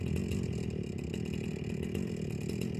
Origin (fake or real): real